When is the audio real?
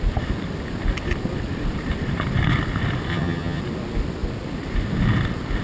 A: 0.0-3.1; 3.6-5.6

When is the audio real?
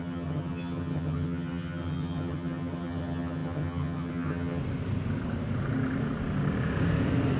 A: 4.6-7.4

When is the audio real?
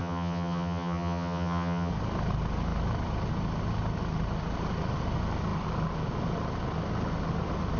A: 1.9-7.8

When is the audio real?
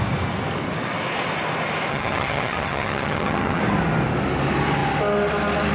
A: 0.0-1.9; 3.6-5.7